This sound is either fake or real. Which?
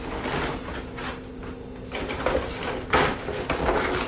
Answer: real